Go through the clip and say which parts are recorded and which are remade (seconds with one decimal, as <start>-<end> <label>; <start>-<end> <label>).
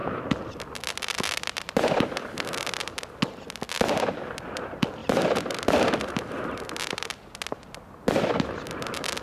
0.0-9.2 recorded